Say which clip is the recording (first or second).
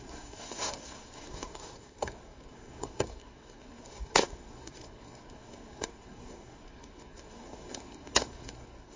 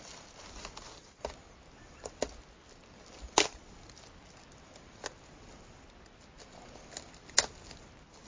second